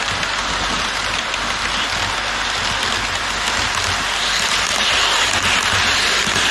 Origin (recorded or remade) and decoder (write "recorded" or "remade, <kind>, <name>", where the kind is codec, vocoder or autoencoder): recorded